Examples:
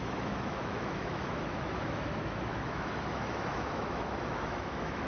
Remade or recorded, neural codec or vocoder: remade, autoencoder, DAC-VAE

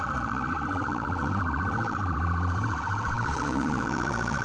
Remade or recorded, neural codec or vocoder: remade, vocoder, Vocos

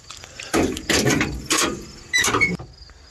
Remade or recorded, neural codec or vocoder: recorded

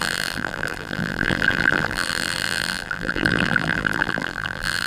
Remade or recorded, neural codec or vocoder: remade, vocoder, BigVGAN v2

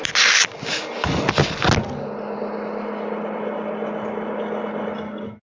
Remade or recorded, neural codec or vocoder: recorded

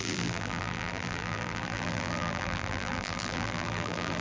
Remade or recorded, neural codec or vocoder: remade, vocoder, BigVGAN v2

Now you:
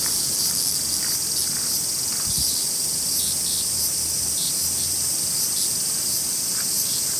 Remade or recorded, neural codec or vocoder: recorded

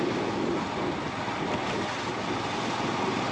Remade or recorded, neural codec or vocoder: recorded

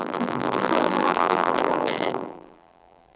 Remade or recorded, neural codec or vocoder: remade, vocoder, BigVGAN v2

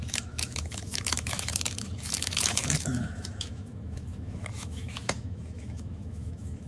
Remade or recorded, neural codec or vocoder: remade, autoencoder, DAC-VAE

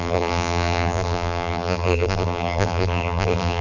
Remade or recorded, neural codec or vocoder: remade, vocoder, BigVGAN v2